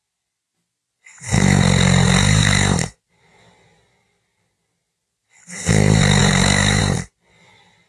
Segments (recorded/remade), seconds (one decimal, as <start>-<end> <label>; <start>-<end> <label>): 0.0-6.2 recorded; 6.2-6.8 remade; 6.8-7.9 recorded